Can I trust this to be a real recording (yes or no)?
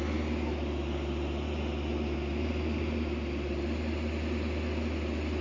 yes